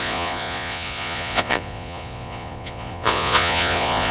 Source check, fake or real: fake